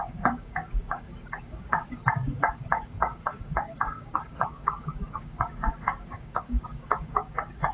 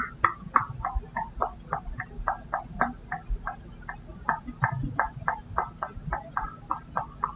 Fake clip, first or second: first